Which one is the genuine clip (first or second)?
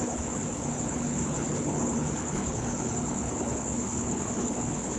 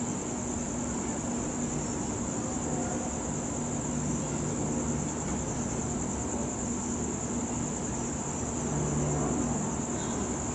second